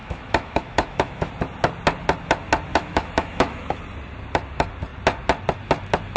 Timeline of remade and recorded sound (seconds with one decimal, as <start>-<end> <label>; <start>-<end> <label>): 0.0-1.3 remade; 1.3-2.7 recorded; 2.7-3.8 remade; 3.8-6.2 recorded